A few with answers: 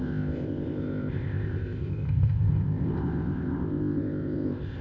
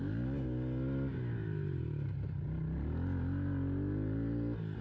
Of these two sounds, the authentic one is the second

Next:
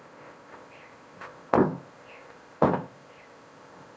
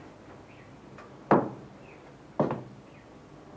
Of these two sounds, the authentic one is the second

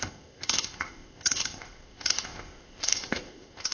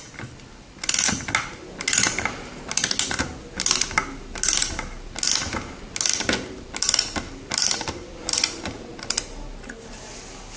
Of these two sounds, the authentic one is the second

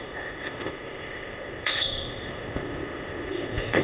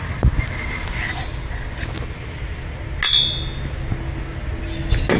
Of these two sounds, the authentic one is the second